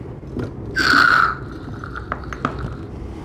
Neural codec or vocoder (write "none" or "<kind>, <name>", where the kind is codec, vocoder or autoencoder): none